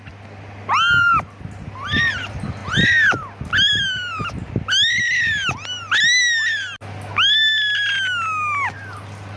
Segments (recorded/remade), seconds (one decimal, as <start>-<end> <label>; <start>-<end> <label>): 0.0-9.4 recorded

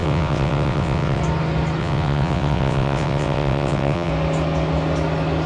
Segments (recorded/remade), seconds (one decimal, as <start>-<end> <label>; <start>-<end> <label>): 0.0-1.2 remade; 1.2-1.8 recorded; 1.8-4.1 remade; 4.1-5.5 recorded

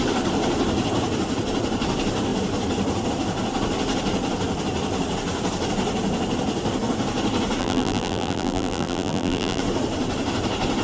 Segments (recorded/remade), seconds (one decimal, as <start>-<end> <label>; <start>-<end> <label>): 0.0-7.6 recorded; 7.6-9.6 remade; 9.6-10.8 recorded

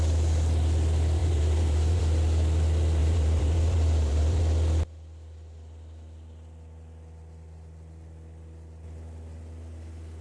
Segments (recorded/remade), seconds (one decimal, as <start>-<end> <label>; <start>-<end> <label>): 0.0-1.2 recorded; 1.2-2.0 remade; 2.0-3.0 recorded; 3.0-4.4 remade; 4.4-10.2 recorded

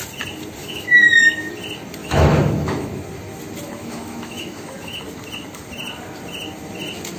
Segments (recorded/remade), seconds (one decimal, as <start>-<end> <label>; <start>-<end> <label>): 0.0-0.6 recorded; 0.6-1.5 remade; 1.5-2.0 recorded; 2.0-2.9 remade; 2.9-3.8 recorded; 3.8-5.0 remade; 5.0-7.2 recorded

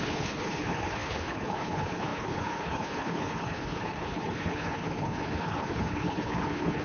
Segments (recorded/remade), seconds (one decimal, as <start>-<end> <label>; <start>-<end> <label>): 0.0-6.8 remade

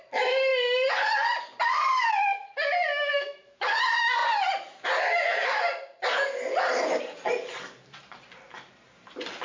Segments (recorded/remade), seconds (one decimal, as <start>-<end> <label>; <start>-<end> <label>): 0.0-2.9 recorded; 2.9-3.8 remade; 3.8-9.4 recorded